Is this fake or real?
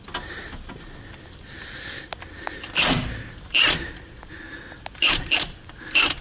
real